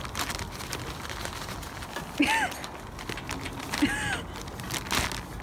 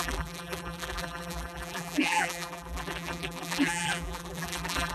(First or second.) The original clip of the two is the first